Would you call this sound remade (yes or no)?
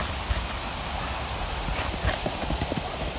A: no